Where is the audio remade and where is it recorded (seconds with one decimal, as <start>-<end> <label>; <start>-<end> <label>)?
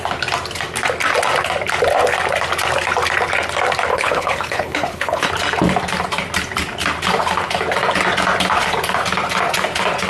0.0-3.9 recorded; 3.9-5.3 remade; 5.3-10.1 recorded